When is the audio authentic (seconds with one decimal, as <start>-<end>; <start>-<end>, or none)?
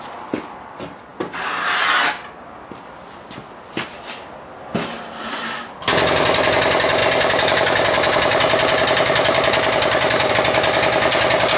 0.0-7.0; 10.3-11.6